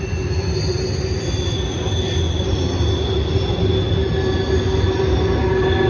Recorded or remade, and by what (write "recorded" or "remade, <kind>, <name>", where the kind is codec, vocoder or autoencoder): recorded